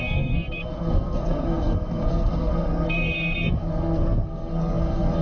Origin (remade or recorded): remade